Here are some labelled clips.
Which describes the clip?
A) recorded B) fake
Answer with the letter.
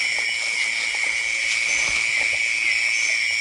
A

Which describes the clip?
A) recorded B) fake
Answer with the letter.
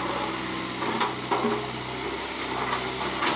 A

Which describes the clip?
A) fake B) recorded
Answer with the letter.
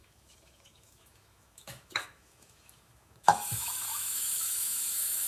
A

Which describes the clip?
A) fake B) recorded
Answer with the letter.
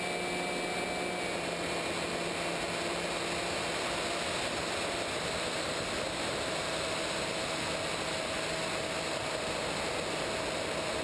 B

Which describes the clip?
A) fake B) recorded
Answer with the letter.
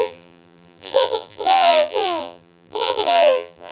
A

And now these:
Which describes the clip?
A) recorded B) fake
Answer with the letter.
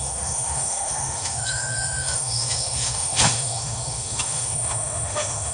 B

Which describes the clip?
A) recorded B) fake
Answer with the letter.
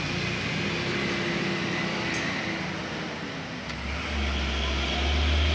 A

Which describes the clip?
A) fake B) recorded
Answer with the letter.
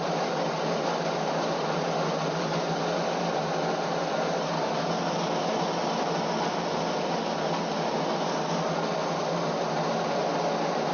B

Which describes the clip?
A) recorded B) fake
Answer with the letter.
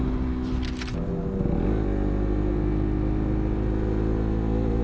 A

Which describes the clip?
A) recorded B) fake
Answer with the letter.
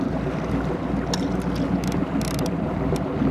A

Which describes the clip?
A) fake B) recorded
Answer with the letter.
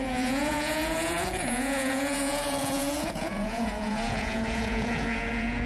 A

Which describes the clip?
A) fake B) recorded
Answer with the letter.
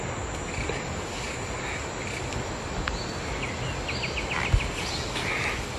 B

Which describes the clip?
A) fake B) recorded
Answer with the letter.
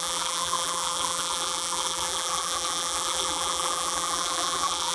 A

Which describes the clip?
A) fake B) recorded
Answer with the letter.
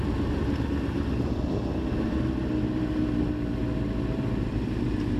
B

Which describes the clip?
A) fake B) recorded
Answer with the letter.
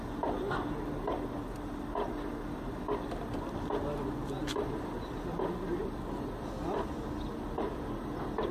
B